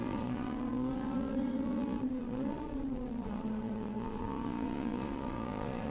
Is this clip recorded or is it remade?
remade